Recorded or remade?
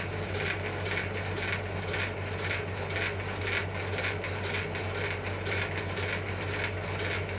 recorded